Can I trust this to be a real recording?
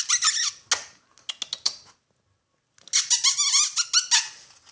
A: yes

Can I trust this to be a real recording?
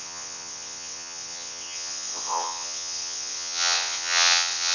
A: no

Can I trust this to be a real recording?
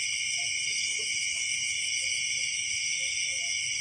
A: yes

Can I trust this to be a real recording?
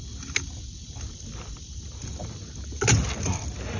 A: yes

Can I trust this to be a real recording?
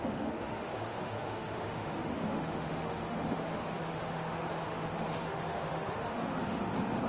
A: no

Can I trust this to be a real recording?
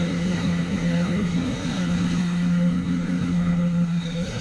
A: no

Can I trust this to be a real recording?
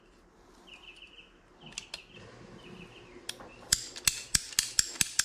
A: yes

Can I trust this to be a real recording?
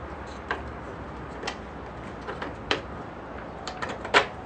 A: no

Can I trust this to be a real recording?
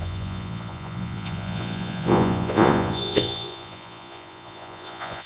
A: no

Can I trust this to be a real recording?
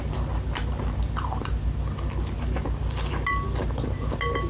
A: yes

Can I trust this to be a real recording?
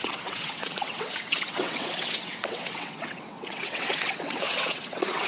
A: no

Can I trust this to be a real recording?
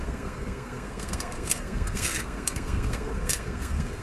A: no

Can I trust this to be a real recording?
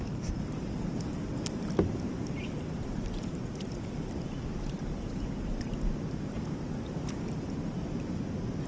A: yes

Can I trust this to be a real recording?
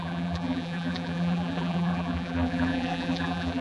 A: no